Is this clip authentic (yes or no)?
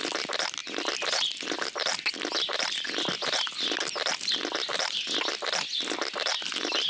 yes